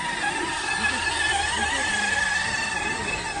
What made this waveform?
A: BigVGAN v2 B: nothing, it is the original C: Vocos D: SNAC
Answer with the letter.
B